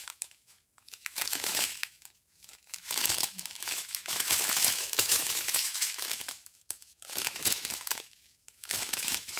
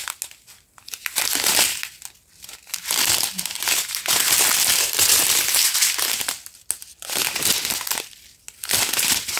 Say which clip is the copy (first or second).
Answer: first